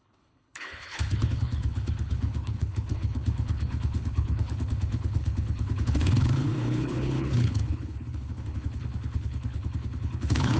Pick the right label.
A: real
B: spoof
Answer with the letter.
B